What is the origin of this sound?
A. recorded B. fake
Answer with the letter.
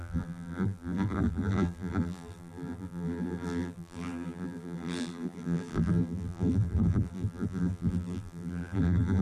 B